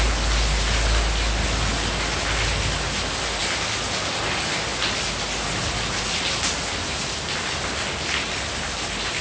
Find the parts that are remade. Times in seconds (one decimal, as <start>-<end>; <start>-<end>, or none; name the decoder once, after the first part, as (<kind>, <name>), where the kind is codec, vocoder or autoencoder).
none